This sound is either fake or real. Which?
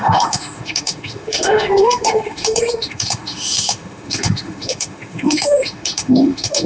fake